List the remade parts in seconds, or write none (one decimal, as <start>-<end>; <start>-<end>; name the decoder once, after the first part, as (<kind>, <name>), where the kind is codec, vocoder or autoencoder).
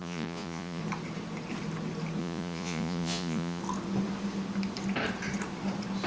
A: 0.0-0.8 (vocoder, Vocos); 2.2-3.6